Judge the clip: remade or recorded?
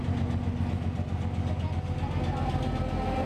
recorded